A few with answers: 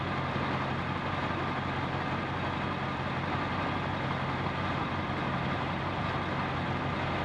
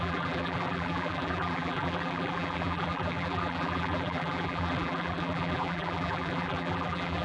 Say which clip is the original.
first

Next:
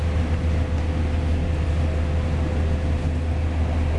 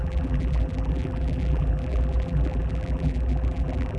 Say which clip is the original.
first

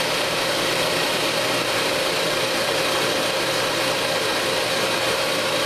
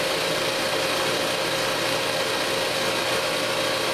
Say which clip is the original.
second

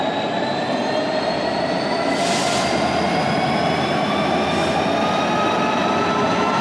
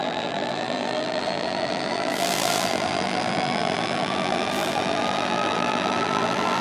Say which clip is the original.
first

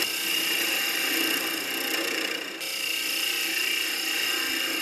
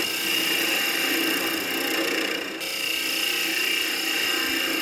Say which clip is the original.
second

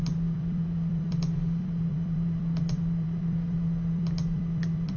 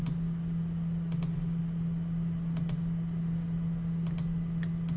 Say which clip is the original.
second